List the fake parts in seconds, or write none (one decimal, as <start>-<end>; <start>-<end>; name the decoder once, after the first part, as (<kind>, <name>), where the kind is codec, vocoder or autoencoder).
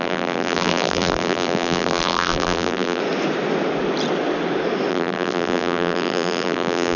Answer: 0.0-3.0 (vocoder, BigVGAN v2); 4.9-7.0